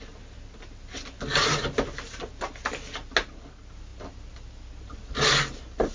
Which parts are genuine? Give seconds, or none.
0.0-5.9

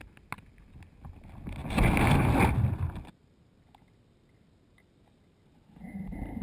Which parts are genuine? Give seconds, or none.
0.0-6.4

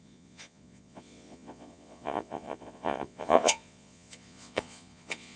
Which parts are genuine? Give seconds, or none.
none

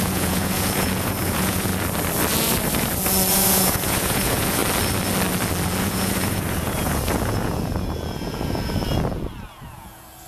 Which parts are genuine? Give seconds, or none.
1.7-3.3; 4.6-5.8

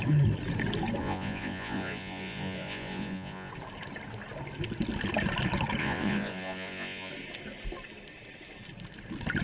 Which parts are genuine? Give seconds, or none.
0.0-1.0; 3.5-5.8; 7.1-9.4

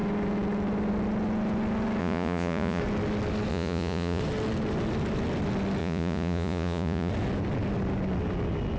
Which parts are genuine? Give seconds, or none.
0.0-2.0; 2.8-3.5; 4.2-5.8; 7.1-8.8

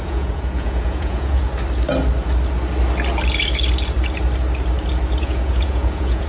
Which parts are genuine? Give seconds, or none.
1.4-5.2

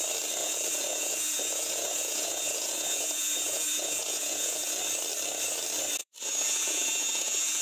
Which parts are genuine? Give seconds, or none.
0.0-0.4; 4.8-6.0